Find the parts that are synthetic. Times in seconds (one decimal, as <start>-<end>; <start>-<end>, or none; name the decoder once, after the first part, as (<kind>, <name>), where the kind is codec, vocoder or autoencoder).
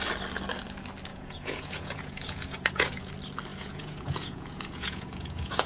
1.1-3.1 (vocoder, Vocos); 3.5-5.7